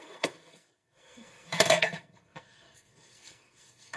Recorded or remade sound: remade